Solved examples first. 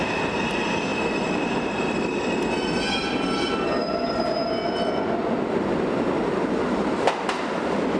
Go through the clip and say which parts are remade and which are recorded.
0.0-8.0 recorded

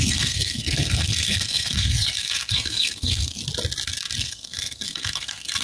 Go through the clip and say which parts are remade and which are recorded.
0.0-3.4 remade; 3.4-4.2 recorded; 4.2-5.6 remade

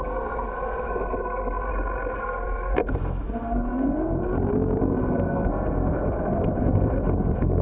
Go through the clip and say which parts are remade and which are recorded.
0.0-1.7 remade; 1.7-2.2 recorded; 2.2-4.2 remade; 4.2-4.8 recorded; 4.8-7.6 remade

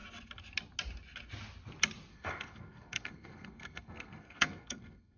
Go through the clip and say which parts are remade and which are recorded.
0.0-2.1 recorded; 2.1-5.2 remade

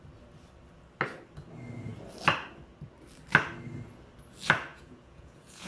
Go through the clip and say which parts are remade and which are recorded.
0.0-4.7 recorded; 4.7-5.7 remade

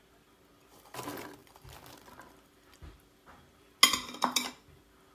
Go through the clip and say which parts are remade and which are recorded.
0.0-5.1 recorded

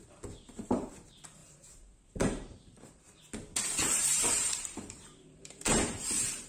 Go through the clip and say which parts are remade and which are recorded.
0.0-0.9 remade; 0.9-1.4 recorded; 1.4-3.2 remade; 3.2-4.0 recorded; 4.0-6.5 remade

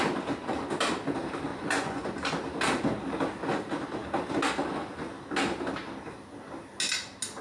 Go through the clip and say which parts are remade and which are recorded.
0.0-1.5 recorded; 1.5-2.1 remade; 2.1-7.4 recorded